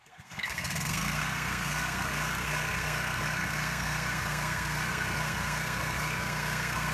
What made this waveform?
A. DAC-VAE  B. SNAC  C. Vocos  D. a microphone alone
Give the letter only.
B